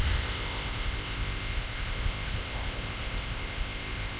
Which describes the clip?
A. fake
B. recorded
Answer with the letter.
A